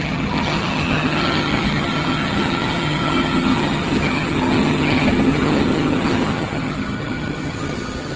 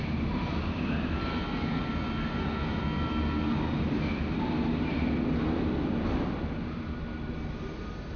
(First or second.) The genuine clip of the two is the second